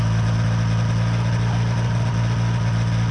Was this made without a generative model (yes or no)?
yes